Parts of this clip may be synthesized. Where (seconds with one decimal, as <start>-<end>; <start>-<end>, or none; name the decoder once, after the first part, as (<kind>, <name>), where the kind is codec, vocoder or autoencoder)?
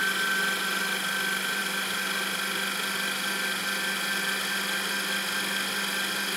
none